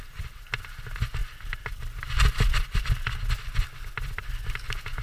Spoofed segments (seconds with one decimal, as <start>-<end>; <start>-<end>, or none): none